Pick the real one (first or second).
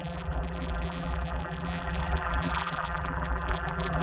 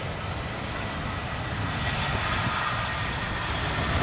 second